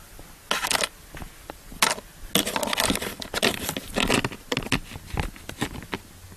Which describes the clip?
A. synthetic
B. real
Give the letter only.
B